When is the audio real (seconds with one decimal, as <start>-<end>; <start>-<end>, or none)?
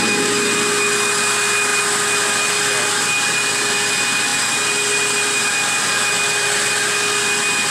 0.0-7.7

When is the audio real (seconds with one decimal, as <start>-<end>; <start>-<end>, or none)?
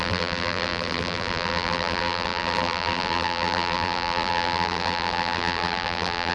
none